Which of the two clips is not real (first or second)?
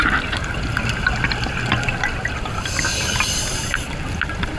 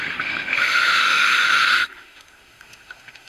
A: second